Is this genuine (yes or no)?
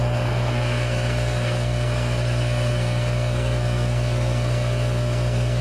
no